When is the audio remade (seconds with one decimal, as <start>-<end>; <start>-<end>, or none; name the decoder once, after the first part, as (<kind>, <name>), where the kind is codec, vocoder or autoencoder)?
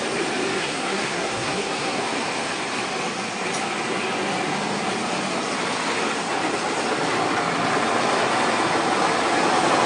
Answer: 0.6-2.0 (codec, SNAC)